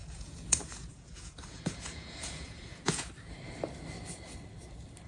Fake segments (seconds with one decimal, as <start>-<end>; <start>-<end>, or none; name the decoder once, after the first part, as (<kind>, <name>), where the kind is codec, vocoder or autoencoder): 0.0-3.1 (vocoder, Vocos)